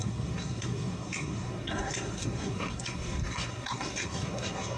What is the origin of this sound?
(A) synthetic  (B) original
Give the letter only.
A